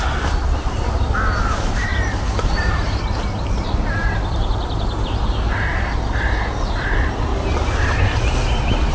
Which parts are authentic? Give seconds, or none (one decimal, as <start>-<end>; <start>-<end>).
0.0-8.9